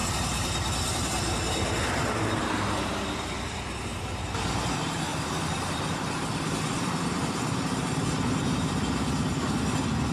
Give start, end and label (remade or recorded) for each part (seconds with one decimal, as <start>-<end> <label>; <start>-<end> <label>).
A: 0.0-4.0 remade; 4.0-5.1 recorded; 5.1-8.4 remade; 8.4-10.1 recorded